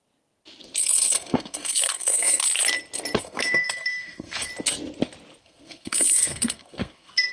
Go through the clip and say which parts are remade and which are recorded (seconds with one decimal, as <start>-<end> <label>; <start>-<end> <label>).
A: 0.0-0.8 recorded; 0.8-2.4 remade; 2.4-3.2 recorded; 3.2-4.5 remade; 4.5-5.4 recorded; 5.4-7.3 remade